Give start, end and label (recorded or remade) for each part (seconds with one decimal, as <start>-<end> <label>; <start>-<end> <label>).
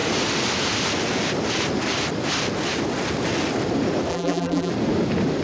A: 0.0-4.1 recorded; 4.1-4.7 remade; 4.7-5.4 recorded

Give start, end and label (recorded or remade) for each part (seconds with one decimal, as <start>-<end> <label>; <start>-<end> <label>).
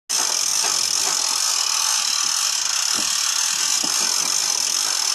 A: 0.0-5.1 recorded